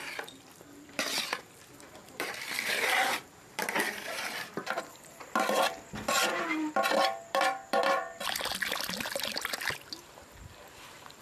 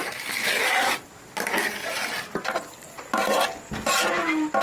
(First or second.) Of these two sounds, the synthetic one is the first